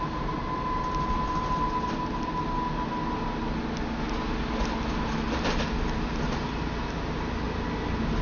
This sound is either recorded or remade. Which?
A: recorded